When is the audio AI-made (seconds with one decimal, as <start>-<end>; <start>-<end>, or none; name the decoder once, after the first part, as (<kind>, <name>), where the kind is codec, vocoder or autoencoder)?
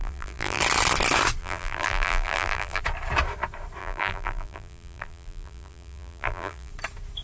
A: 0.0-0.6 (vocoder, BigVGAN v2); 1.4-2.8; 3.8-6.7